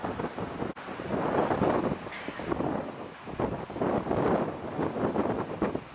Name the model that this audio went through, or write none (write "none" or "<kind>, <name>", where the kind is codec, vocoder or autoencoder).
none